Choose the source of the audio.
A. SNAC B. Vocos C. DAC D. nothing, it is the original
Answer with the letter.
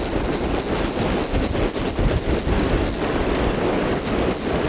D